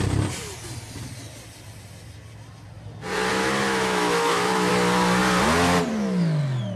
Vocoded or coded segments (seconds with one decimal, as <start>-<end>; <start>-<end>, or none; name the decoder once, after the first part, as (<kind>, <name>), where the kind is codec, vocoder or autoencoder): 3.3-4.7 (autoencoder, DAC-VAE)